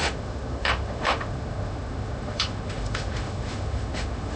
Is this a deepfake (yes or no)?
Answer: yes